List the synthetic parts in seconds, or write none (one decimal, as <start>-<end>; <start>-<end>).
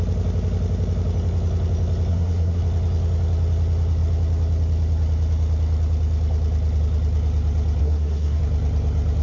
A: 2.1-2.6; 7.8-8.4